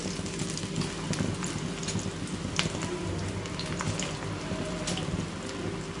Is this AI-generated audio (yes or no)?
no